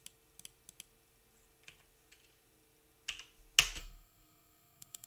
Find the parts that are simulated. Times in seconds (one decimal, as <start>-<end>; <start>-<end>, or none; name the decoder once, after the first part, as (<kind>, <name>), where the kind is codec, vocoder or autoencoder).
3.8-5.1 (codec, SNAC)